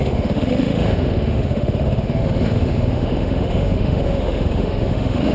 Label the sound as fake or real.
fake